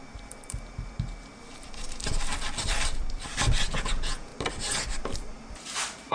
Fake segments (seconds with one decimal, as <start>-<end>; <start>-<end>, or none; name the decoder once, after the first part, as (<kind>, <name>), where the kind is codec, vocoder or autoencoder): 3.7-4.3 (vocoder, Vocos)